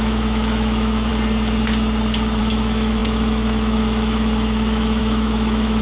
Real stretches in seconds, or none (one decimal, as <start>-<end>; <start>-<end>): 1.1-2.4